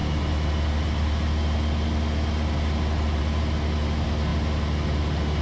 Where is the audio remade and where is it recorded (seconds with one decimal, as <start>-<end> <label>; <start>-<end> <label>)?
0.0-5.4 recorded